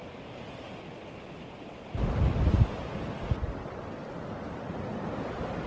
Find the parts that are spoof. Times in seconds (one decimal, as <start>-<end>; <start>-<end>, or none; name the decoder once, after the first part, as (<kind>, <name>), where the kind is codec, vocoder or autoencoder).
4.9-5.7 (vocoder, BigVGAN v2)